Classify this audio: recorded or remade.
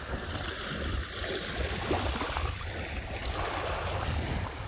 recorded